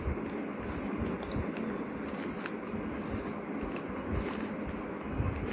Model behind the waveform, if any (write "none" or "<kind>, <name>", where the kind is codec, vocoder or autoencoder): none